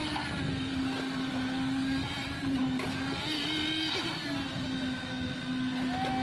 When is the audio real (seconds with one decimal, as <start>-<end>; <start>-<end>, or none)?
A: 0.0-6.2